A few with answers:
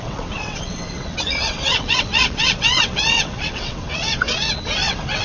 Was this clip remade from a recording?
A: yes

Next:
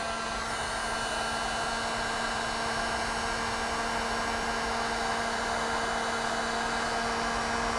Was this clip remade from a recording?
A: no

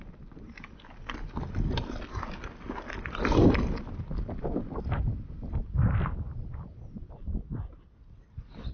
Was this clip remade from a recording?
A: no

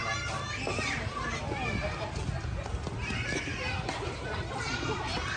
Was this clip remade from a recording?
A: no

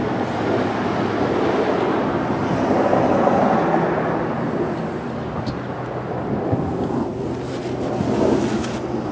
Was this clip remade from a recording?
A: no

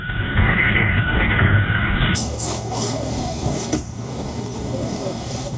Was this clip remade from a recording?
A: yes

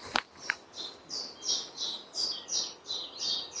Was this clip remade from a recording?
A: no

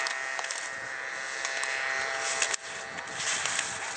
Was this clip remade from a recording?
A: no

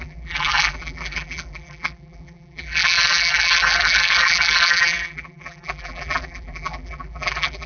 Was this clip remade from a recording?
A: yes